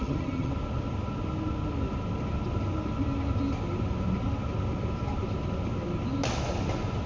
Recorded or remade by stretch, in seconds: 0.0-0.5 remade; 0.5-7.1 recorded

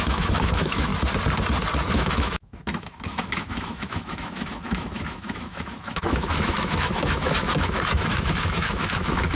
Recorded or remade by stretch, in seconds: 0.0-0.9 remade; 0.9-1.9 recorded; 1.9-9.3 remade

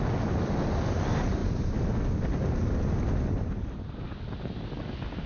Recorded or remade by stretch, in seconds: 0.0-5.3 recorded

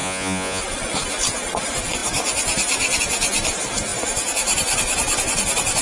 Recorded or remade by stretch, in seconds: 0.0-0.6 remade; 0.6-5.8 recorded

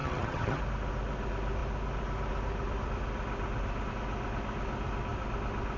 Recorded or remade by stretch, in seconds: 0.0-0.6 remade; 0.6-5.8 recorded

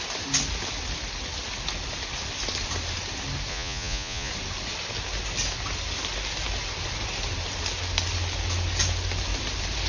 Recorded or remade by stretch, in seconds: 0.0-3.5 recorded; 3.5-4.3 remade; 4.3-9.9 recorded